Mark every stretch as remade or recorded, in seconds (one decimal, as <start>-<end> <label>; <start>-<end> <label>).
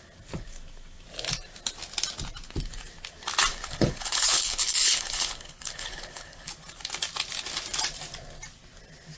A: 0.0-3.5 recorded; 3.5-6.5 remade; 6.5-9.2 recorded